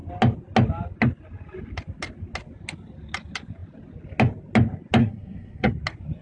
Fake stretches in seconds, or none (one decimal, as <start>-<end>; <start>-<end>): 5.0-5.7